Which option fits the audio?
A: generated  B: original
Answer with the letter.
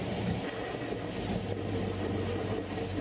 B